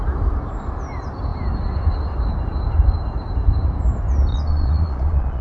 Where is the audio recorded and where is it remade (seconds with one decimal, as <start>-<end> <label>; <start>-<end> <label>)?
0.0-4.3 recorded; 4.3-5.4 remade